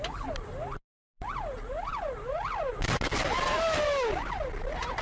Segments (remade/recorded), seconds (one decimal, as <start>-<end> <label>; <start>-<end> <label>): 0.0-5.0 recorded